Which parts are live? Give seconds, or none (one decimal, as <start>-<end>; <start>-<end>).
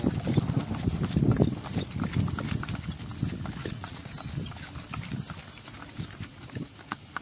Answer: 0.0-3.6; 4.1-7.2